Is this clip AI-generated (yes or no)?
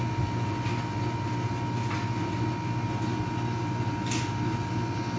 no